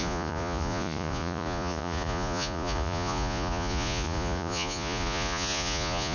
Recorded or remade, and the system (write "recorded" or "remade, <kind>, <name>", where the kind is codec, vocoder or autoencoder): remade, vocoder, Vocos